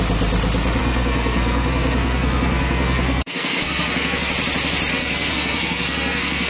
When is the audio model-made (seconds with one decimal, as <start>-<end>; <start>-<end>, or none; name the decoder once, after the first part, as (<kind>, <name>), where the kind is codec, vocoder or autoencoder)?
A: 0.8-4.3 (codec, SNAC); 4.9-6.5